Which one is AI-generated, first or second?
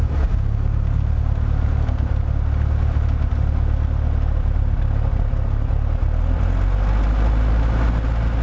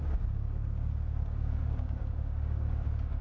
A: second